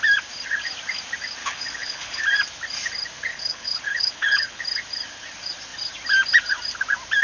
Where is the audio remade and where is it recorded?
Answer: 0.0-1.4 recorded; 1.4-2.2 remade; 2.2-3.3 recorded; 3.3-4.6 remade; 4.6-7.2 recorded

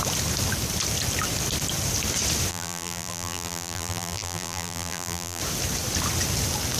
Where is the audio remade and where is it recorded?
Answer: 0.0-2.5 recorded; 2.5-5.4 remade; 5.4-6.8 recorded

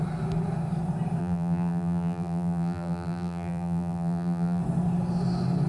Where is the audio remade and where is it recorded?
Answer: 0.0-1.2 recorded; 1.2-4.6 remade; 4.6-5.7 recorded

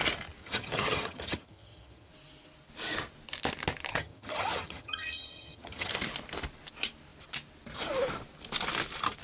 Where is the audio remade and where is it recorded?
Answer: 0.0-0.4 recorded; 0.4-2.1 remade; 2.1-3.9 recorded; 3.9-5.9 remade; 5.9-9.2 recorded